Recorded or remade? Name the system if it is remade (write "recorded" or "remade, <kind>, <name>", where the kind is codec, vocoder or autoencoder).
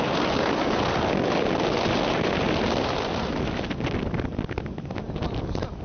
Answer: recorded